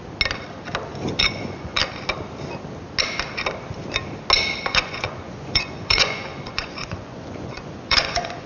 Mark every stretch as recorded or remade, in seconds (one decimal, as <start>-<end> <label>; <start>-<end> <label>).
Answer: 0.0-1.2 recorded; 1.2-1.8 remade; 1.8-4.6 recorded; 4.6-8.5 remade